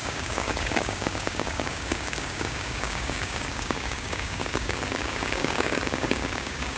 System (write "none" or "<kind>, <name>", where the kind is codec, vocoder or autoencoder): codec, DAC